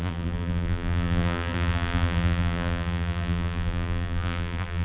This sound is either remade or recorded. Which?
remade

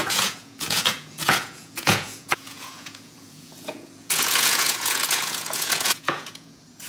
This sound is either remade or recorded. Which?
remade